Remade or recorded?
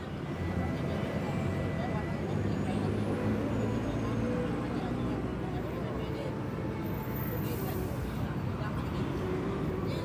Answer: recorded